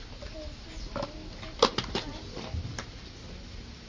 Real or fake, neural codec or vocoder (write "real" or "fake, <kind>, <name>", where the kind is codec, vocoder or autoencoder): real